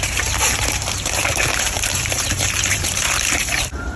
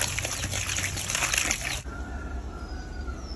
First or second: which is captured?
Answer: second